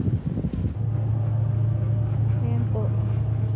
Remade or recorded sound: recorded